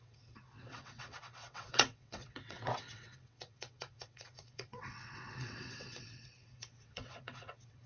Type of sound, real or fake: fake